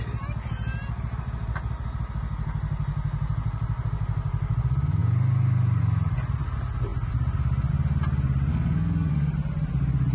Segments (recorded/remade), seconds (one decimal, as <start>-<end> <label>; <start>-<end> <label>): 0.0-8.5 recorded; 8.5-9.3 remade; 9.3-10.1 recorded